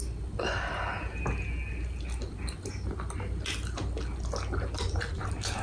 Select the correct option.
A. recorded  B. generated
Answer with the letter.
A